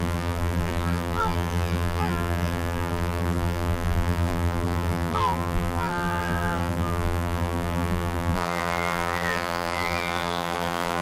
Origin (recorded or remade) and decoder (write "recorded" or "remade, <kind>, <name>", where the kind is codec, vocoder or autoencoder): remade, vocoder, BigVGAN v2